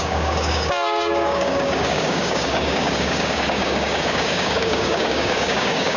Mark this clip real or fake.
fake